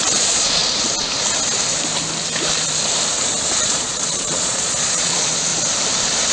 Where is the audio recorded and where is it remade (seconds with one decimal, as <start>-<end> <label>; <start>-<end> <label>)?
0.0-0.6 remade; 0.6-3.6 recorded; 3.6-5.5 remade; 5.5-6.3 recorded